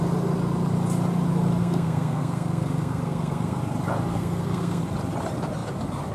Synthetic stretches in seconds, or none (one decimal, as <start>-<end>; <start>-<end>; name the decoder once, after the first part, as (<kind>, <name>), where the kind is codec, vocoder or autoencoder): 1.6-3.6 (codec, SNAC); 4.1-4.8